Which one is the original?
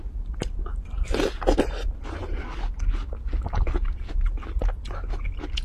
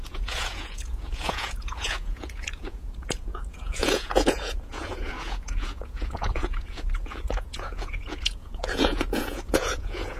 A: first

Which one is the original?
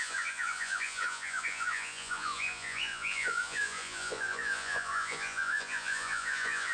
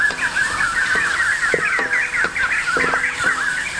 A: second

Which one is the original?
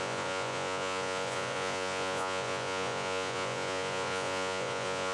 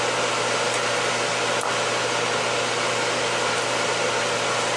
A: second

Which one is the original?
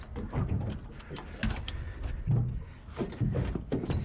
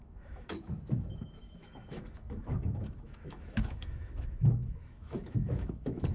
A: first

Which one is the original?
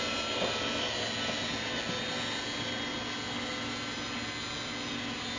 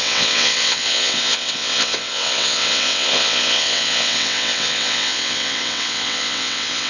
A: first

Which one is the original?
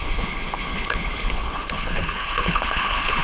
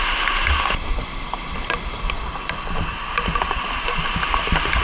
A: second